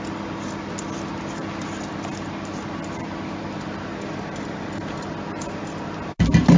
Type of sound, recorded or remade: recorded